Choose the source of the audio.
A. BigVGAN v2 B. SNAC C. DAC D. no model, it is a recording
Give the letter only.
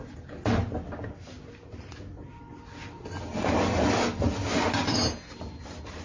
D